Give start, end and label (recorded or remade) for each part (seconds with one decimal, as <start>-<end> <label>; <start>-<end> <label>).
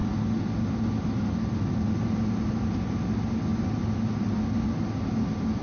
0.0-5.6 recorded